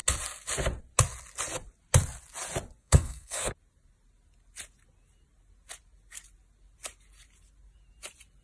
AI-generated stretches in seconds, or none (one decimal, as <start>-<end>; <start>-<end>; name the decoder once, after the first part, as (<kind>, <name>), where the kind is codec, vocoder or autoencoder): 2.8-3.5 (codec, SNAC)